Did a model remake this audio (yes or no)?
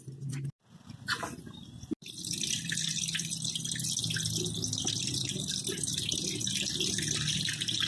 no